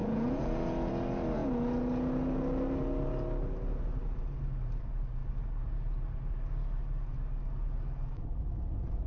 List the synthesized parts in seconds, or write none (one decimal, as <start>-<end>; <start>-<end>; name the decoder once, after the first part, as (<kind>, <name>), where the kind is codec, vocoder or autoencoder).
0.0-0.9 (vocoder, Vocos)